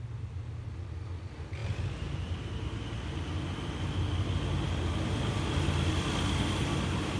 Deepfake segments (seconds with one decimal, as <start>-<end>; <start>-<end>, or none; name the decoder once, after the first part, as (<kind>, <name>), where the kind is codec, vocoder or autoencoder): none